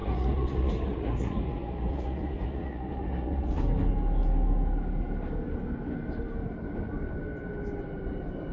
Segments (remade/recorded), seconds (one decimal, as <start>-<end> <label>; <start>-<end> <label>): 0.0-3.6 remade; 3.6-8.5 recorded